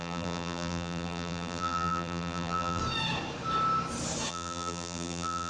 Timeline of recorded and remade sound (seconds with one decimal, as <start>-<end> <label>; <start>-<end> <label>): 0.0-2.8 remade; 2.8-4.3 recorded; 4.3-5.5 remade